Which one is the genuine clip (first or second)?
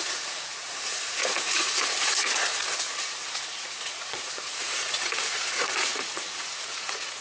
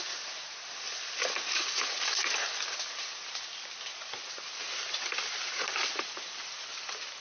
second